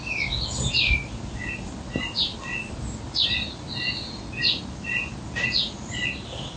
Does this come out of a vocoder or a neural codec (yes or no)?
no